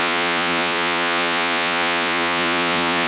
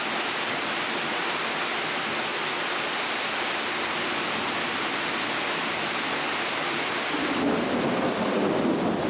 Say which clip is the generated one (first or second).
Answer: first